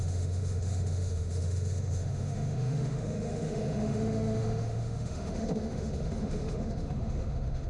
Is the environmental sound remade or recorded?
remade